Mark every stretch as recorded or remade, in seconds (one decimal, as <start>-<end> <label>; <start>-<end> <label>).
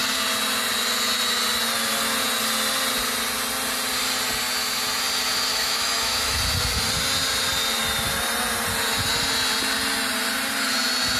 0.0-5.5 recorded; 5.5-6.4 remade; 6.4-11.2 recorded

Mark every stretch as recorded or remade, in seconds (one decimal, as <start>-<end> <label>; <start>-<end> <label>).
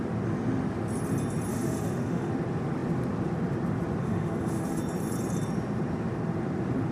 0.0-1.5 recorded; 1.5-2.3 remade; 2.3-4.0 recorded; 4.0-4.8 remade; 4.8-6.9 recorded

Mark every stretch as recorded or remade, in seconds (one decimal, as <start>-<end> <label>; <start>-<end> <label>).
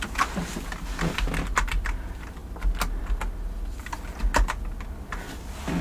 0.0-5.8 recorded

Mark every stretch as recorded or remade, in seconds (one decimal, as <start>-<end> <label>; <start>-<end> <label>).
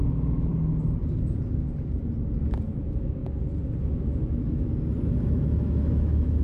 0.0-0.5 remade; 0.5-2.7 recorded; 2.7-3.2 remade; 3.2-3.8 recorded; 3.8-4.7 remade; 4.7-5.3 recorded; 5.3-6.4 remade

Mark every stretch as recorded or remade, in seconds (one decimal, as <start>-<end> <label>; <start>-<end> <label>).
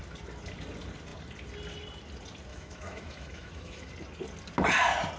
0.0-2.5 recorded; 2.5-3.9 remade; 3.9-5.2 recorded